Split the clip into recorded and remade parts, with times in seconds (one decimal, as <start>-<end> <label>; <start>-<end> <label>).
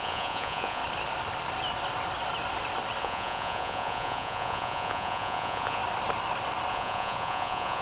0.0-0.8 remade; 0.8-3.0 recorded; 3.0-5.8 remade; 5.8-6.7 recorded; 6.7-7.8 remade